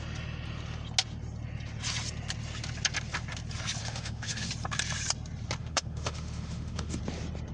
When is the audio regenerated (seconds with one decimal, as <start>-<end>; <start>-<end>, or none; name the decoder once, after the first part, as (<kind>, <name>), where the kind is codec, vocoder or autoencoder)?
3.8-4.5 (autoencoder, DAC-VAE); 5.6-7.0